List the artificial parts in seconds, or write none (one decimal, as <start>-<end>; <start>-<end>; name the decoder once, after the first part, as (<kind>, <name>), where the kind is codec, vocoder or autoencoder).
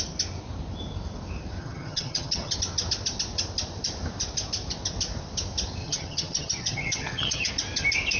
1.6-2.5 (vocoder, HiFi-GAN); 5.8-7.5